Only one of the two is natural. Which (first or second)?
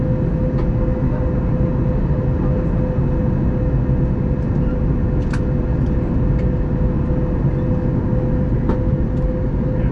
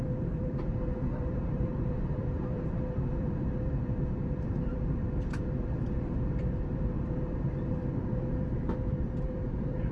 first